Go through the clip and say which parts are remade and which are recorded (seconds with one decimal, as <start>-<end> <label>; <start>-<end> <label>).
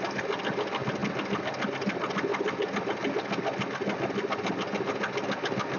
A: 0.0-5.8 recorded